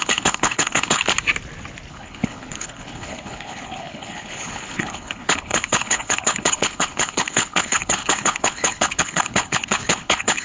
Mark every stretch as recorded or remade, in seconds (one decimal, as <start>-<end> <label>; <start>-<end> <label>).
0.0-1.0 remade; 1.0-1.9 recorded; 1.9-10.4 remade